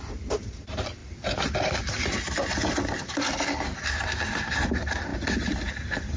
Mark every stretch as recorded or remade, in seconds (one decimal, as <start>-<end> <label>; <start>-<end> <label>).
0.0-6.2 recorded